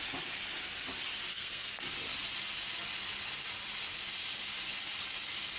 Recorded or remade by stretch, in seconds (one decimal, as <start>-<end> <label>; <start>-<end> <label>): 0.0-1.3 recorded; 1.3-1.8 remade; 1.8-5.6 recorded

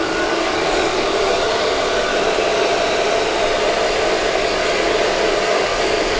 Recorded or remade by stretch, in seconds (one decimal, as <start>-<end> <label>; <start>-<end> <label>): 0.0-2.1 remade; 2.1-4.3 recorded; 4.3-6.2 remade

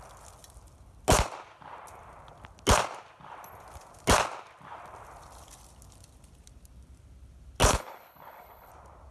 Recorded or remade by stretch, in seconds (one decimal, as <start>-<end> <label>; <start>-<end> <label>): 0.0-7.7 recorded; 7.7-8.7 remade; 8.7-9.1 recorded

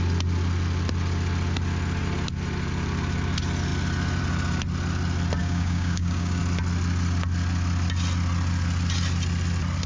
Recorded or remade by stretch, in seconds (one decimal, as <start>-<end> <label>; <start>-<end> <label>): 0.0-5.4 recorded; 5.4-6.4 remade; 6.4-9.9 recorded

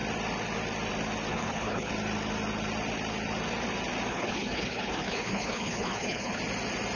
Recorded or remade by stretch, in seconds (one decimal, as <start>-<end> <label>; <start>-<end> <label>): 0.0-1.3 recorded; 1.3-1.9 remade; 1.9-4.1 recorded; 4.1-6.4 remade; 6.4-7.0 recorded

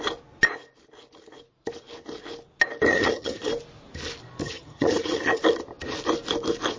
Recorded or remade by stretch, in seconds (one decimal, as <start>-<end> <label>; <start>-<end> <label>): 0.0-2.9 recorded; 2.9-3.5 remade; 3.5-4.4 recorded; 4.4-5.4 remade; 5.4-6.8 recorded

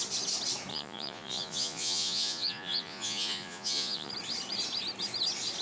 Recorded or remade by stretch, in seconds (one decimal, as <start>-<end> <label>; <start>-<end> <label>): 0.0-0.7 recorded; 0.7-4.1 remade; 4.1-5.6 recorded